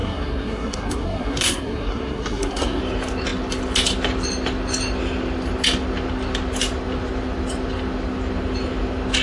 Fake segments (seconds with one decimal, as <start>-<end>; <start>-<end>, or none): 0.0-2.8